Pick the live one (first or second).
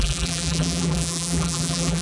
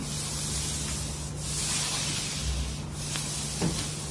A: second